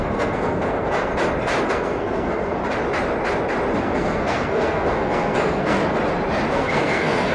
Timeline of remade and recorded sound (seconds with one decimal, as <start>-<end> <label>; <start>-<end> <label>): 0.0-1.1 remade; 1.1-1.7 recorded; 1.7-2.6 remade; 2.6-3.8 recorded; 3.8-5.8 remade; 5.8-6.5 recorded; 6.5-7.3 remade